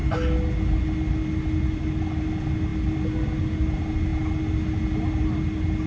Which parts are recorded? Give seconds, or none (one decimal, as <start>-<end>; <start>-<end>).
0.0-5.9